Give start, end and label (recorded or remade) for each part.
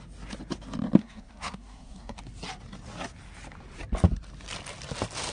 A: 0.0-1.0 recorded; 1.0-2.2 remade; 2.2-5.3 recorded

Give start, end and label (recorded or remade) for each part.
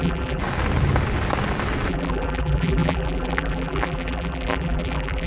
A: 0.0-0.4 remade; 0.4-1.9 recorded; 1.9-5.3 remade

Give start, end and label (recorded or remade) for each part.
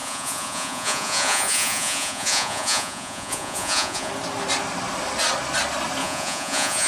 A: 0.0-4.1 remade; 4.1-6.0 recorded; 6.0-6.9 remade